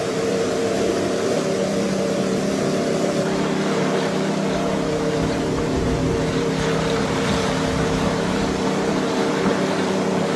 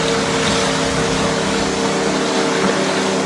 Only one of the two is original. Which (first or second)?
second